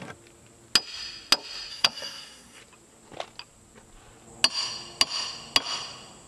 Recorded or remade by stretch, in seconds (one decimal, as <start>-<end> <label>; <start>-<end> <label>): 0.0-1.7 recorded; 1.7-2.6 remade; 2.6-6.3 recorded